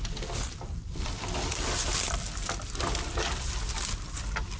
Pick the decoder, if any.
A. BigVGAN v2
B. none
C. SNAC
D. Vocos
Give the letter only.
B